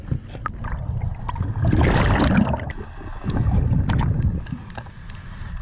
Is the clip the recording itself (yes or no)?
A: yes